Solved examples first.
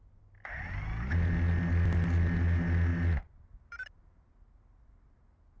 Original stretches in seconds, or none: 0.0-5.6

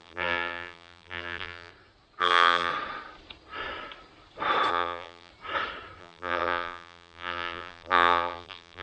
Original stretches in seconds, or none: 1.7-2.2; 2.7-4.7; 5.3-6.0

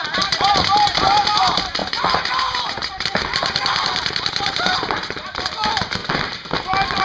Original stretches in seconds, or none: 6.0-7.0

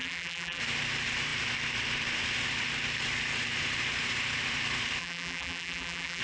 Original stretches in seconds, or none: 0.6-5.0

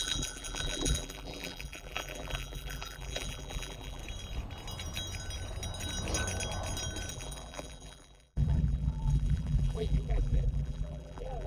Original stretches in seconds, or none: 4.0-7.1

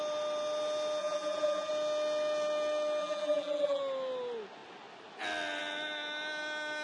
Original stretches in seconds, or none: 0.0-1.0; 1.7-3.0; 3.8-6.8